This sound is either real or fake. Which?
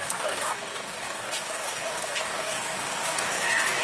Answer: fake